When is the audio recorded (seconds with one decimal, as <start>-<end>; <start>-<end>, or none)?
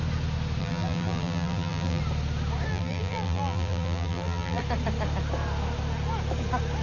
0.0-0.6; 2.0-2.7; 4.6-6.8